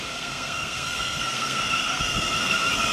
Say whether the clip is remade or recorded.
remade